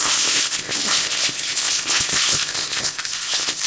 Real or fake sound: fake